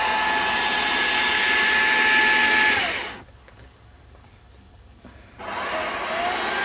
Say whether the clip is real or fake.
real